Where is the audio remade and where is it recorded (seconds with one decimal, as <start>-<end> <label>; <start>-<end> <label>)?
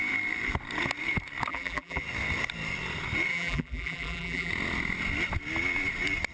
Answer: 0.0-1.5 recorded; 1.5-2.0 remade; 2.0-3.3 recorded; 3.3-4.5 remade; 4.5-6.3 recorded